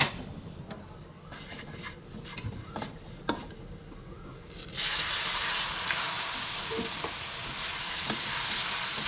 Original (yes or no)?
yes